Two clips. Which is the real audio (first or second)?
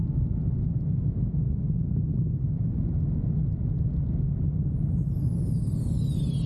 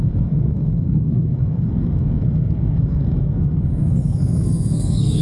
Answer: first